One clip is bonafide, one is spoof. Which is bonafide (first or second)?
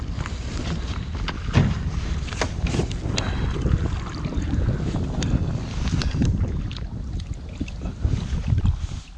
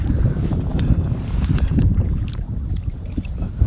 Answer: first